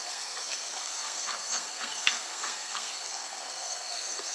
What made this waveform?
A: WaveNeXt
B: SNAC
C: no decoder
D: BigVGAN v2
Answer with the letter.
B